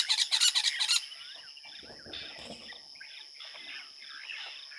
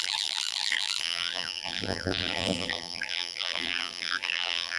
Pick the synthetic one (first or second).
second